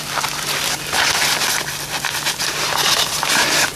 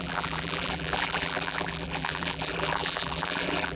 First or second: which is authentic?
first